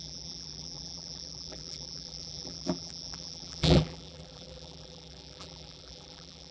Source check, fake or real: fake